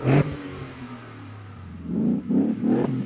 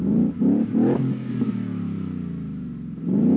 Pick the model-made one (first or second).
first